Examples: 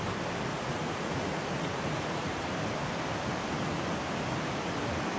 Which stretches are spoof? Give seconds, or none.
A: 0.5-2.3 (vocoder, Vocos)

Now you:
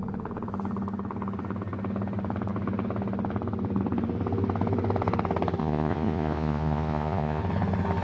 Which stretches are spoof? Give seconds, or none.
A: 5.6-7.4 (vocoder, Vocos)

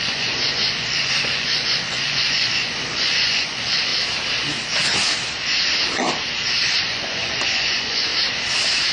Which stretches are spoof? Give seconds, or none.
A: 0.0-3.9 (vocoder, Vocos); 6.8-8.1

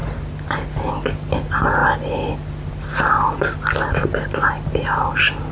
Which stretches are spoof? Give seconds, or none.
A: none

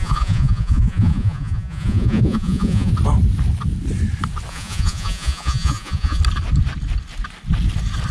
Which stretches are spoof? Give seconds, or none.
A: 0.0-2.9 (vocoder, Vocos); 4.5-6.2

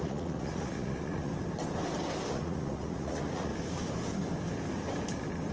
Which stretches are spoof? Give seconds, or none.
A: 0.0-1.3 (vocoder, Vocos); 2.3-3.5